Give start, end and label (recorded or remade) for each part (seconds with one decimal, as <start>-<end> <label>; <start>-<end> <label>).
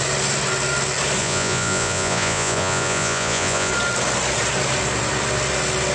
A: 0.0-1.2 recorded; 1.2-3.7 remade; 3.7-5.9 recorded